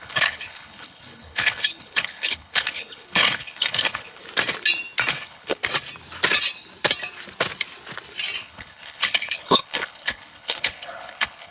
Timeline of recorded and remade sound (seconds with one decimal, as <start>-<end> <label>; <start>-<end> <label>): 0.0-4.2 remade; 4.2-5.1 recorded; 5.1-5.6 remade; 5.6-8.4 recorded; 8.4-11.5 remade